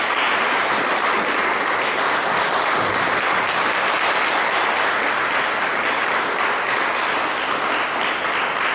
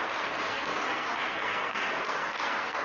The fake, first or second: second